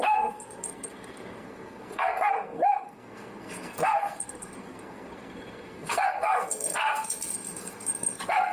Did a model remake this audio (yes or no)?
yes